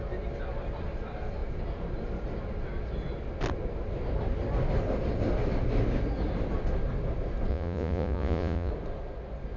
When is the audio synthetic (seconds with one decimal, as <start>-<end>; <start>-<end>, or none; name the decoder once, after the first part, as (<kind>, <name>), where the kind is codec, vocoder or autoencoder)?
7.5-8.7 (vocoder, Vocos)